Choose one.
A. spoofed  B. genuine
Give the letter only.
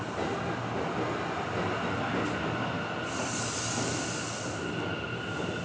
B